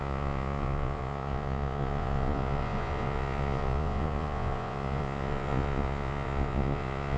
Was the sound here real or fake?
fake